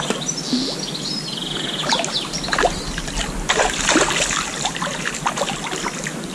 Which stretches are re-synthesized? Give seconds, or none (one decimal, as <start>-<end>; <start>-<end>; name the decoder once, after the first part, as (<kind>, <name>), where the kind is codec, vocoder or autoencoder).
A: none